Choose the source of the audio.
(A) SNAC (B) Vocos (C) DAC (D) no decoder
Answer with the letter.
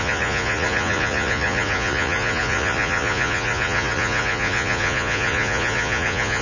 B